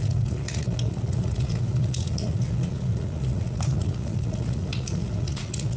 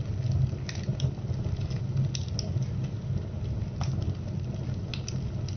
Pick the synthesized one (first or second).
first